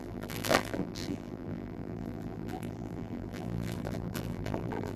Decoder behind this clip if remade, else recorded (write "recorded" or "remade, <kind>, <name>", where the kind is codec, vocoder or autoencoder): remade, vocoder, BigVGAN v2